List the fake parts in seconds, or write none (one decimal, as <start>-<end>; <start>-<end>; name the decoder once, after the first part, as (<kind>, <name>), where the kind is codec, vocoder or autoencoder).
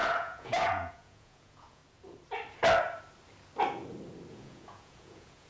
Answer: 0.0-1.8 (vocoder, Vocos); 4.3-5.5